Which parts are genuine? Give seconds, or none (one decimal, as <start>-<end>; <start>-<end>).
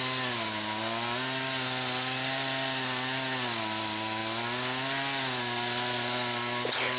0.0-7.0